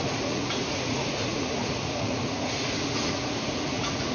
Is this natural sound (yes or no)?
no